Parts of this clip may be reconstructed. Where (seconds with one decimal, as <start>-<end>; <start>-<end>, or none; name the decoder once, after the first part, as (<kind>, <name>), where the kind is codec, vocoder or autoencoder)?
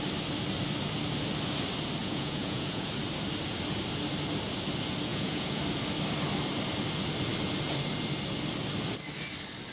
2.0-2.9 (vocoder, Vocos); 5.1-5.6